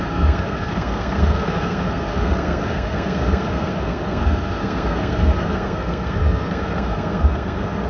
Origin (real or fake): fake